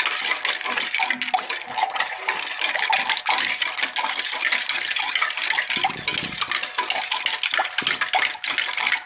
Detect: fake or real real